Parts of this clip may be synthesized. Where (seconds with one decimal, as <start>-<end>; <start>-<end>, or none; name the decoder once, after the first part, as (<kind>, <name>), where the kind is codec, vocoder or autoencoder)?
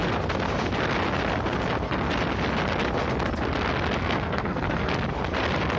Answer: 4.0-4.9 (codec, SNAC)